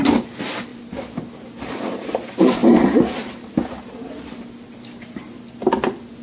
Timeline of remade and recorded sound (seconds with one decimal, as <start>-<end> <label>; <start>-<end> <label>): 0.0-6.2 recorded